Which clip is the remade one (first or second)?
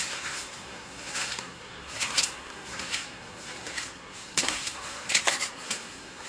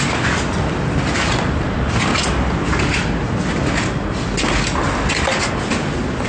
first